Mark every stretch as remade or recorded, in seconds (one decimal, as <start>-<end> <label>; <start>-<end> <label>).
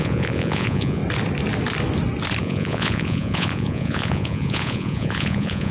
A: 0.0-1.0 remade; 1.0-2.4 recorded; 2.4-5.7 remade